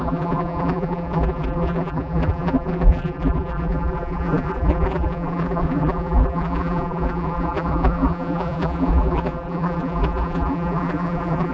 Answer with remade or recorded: remade